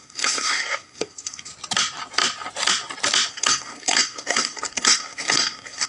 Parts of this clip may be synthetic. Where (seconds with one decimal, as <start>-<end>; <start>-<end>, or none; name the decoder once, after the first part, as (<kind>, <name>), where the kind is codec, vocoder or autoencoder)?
0.0-1.5 (codec, SNAC); 3.3-5.9